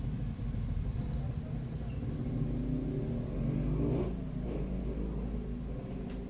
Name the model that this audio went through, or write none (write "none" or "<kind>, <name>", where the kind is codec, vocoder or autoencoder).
none